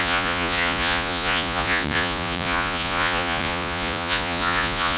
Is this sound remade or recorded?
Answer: remade